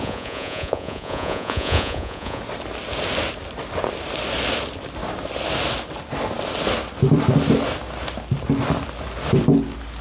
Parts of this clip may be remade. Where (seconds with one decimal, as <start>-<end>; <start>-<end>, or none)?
0.0-2.4